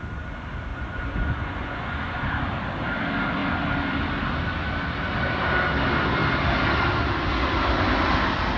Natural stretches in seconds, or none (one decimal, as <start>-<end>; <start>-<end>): 0.0-0.7; 2.4-8.6